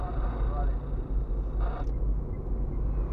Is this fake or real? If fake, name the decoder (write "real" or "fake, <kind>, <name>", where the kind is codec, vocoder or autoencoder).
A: real